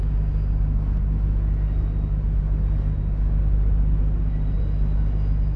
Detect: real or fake real